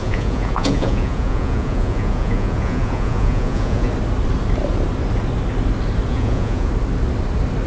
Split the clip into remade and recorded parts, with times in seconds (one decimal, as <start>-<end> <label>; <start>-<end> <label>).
0.0-3.9 remade; 3.9-6.1 recorded; 6.1-6.7 remade; 6.7-7.7 recorded